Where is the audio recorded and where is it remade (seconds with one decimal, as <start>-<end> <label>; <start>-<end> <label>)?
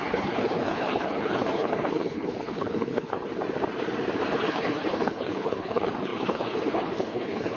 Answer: 0.0-3.3 remade; 3.3-4.4 recorded; 4.4-7.6 remade